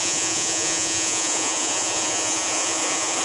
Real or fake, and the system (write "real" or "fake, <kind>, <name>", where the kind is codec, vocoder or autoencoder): fake, vocoder, Vocos